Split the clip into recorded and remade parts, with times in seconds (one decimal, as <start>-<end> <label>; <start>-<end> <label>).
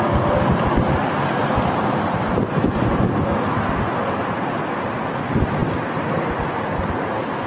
0.0-7.5 recorded